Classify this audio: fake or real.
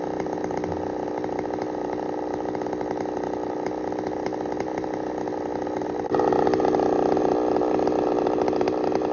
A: real